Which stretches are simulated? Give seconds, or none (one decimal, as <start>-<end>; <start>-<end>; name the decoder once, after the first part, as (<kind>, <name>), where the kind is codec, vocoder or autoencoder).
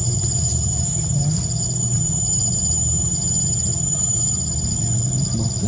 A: none